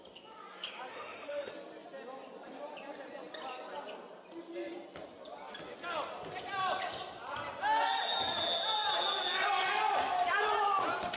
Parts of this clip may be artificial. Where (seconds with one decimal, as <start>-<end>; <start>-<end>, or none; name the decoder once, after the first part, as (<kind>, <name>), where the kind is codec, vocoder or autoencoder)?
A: 0.9-1.5 (autoencoder, DAC-VAE)